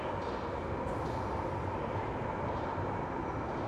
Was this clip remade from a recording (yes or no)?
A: no